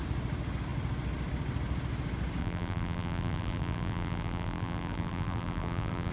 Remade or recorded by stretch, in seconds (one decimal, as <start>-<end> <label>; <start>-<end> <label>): 0.0-2.4 recorded; 2.4-6.1 remade

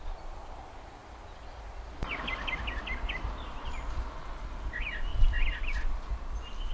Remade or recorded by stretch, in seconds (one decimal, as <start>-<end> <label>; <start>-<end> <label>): 0.0-6.7 recorded